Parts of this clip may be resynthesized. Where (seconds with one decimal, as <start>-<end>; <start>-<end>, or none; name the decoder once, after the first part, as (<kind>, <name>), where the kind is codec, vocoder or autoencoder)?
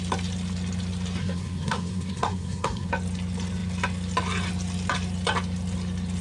1.2-2.9 (codec, SNAC)